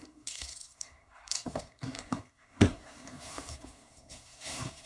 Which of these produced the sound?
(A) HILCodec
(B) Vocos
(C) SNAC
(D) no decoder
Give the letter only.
C